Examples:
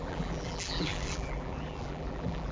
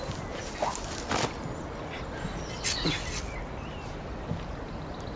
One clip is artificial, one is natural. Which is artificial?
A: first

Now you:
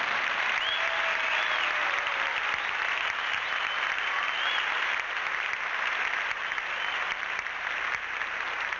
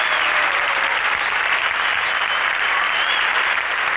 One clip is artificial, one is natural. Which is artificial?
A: second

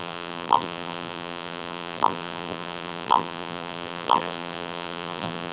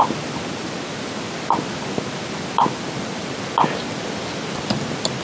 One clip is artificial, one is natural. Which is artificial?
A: first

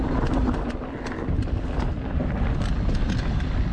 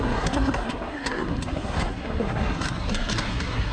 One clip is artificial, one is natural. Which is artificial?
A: second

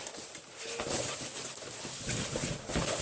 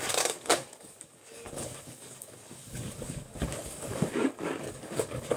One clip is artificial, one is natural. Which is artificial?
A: second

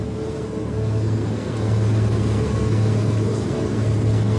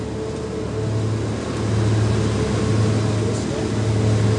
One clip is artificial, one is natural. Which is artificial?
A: first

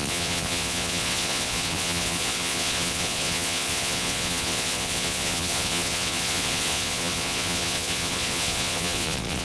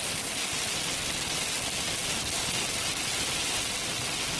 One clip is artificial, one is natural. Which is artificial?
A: first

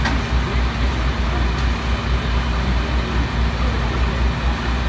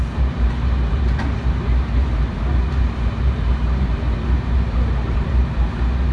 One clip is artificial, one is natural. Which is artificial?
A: second